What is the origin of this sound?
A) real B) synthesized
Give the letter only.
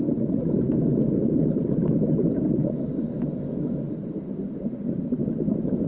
A